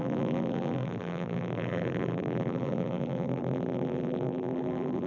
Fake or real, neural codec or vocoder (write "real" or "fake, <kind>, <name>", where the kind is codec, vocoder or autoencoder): fake, vocoder, BigVGAN v2